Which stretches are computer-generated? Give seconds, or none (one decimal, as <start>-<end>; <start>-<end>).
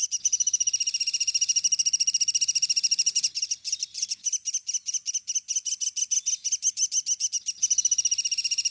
none